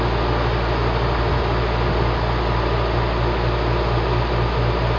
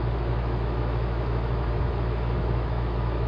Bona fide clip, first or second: first